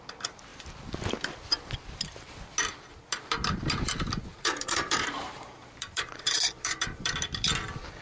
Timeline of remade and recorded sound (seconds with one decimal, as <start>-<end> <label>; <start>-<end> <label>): 0.0-4.3 recorded; 4.3-7.1 remade; 7.1-8.0 recorded